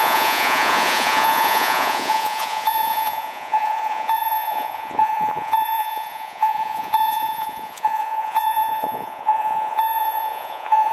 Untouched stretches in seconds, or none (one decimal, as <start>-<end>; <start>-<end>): none